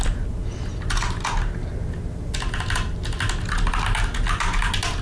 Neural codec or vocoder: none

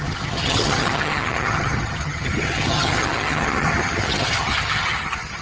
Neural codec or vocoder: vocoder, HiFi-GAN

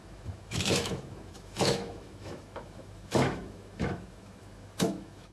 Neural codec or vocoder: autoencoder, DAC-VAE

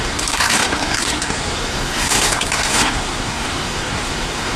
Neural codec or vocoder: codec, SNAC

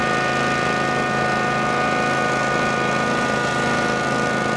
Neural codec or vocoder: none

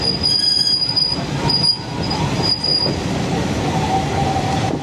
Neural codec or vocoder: none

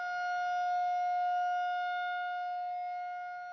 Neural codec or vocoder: none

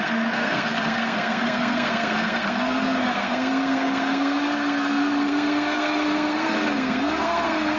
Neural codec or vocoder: codec, SNAC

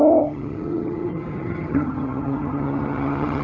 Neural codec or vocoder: vocoder, HiFi-GAN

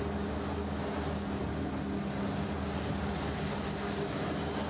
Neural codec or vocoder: none